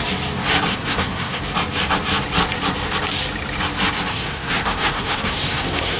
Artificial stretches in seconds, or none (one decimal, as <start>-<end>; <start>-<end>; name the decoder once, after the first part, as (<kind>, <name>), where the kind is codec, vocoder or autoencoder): 0.7-1.4 (codec, SNAC); 4.1-6.0